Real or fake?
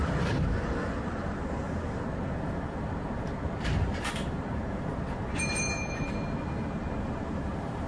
fake